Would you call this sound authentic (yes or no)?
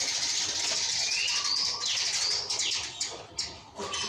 yes